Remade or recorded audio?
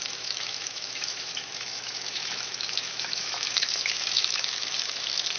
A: remade